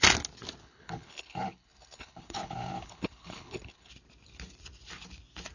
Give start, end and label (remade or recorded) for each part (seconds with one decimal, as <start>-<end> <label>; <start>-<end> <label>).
0.0-0.6 recorded; 0.6-3.9 remade; 3.9-5.5 recorded